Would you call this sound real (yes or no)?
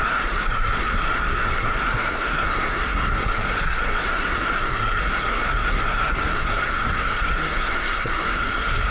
no